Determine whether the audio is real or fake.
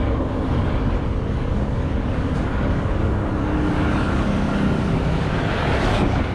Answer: fake